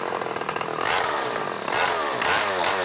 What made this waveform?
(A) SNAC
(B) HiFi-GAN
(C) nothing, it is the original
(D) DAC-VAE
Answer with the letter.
C